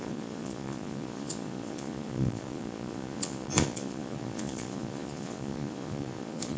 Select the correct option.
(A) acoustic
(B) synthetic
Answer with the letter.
B